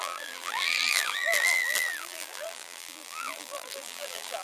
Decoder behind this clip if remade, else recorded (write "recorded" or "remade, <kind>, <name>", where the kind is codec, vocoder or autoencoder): remade, vocoder, BigVGAN v2